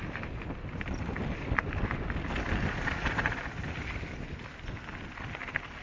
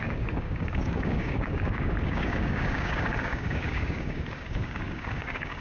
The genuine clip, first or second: first